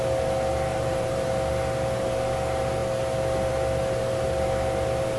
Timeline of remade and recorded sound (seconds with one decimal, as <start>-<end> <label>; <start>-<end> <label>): 0.0-0.7 recorded; 0.7-1.3 remade; 1.3-5.2 recorded